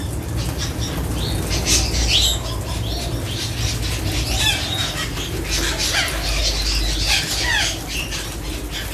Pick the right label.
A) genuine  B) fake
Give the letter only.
A